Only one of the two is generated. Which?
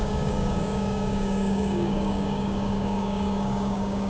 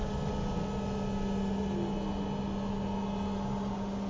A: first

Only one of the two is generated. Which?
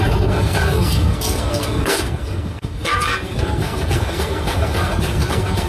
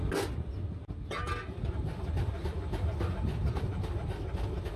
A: first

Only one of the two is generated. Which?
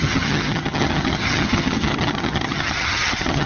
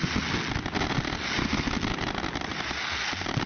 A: first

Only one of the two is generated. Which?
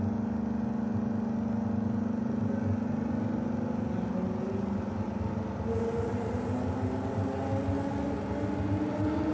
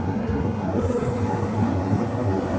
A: second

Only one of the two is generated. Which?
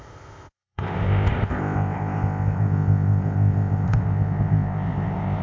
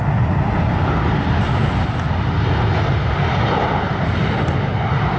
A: first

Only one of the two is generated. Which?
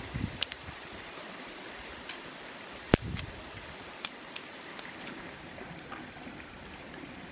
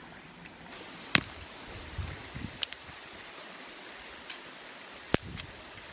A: first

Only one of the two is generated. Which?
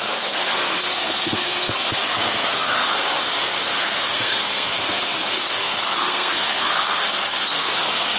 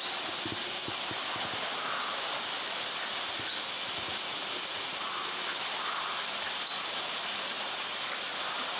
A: first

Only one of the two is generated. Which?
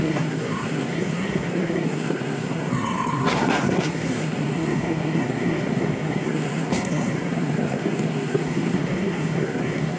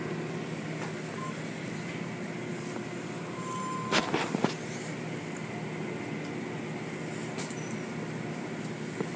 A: first